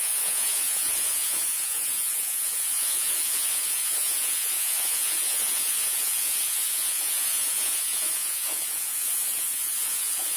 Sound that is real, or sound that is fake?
fake